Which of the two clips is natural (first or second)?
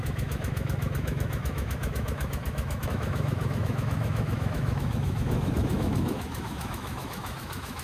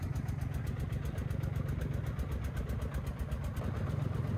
second